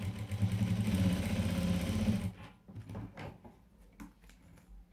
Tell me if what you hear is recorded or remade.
recorded